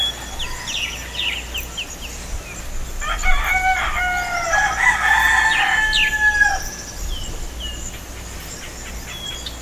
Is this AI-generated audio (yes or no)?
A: no